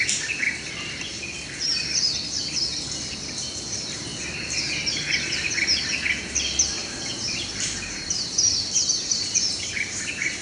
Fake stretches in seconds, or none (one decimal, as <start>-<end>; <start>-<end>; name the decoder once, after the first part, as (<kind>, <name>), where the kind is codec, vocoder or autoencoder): 1.1-1.8 (vocoder, BigVGAN v2); 6.8-10.4